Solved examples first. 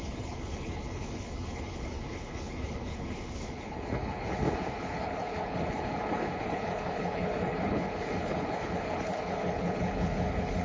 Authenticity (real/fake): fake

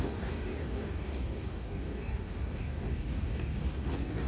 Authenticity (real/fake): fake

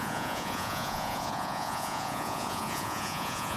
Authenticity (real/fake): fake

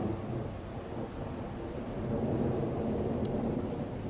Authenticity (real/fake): real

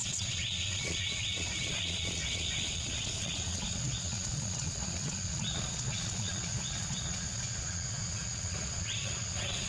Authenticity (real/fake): fake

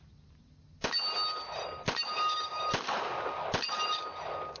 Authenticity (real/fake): real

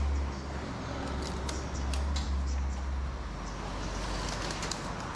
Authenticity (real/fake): real